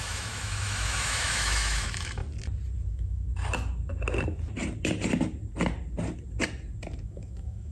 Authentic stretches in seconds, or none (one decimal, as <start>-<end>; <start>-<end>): 2.2-2.9; 3.3-7.0